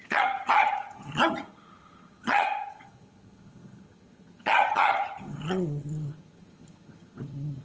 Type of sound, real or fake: fake